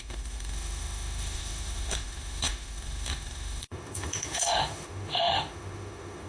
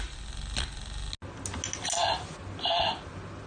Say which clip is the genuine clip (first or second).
second